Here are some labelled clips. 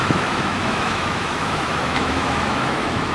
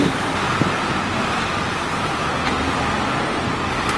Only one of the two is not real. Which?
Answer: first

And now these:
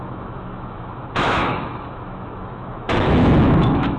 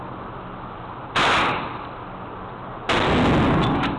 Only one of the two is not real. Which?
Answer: first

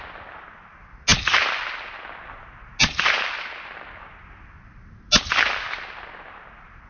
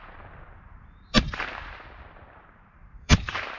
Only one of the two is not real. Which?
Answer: second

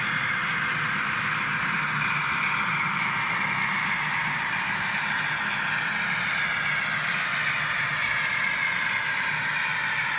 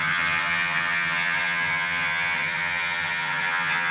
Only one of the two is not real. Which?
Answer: second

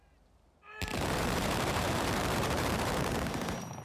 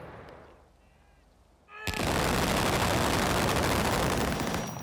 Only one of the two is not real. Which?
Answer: first